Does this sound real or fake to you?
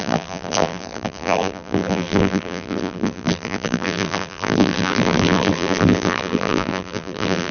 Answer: fake